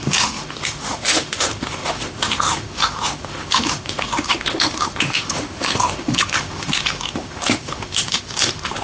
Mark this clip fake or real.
fake